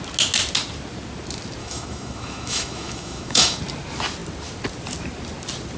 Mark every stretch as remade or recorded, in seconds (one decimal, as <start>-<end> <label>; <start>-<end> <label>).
0.0-1.6 recorded; 1.6-3.6 remade; 3.6-5.8 recorded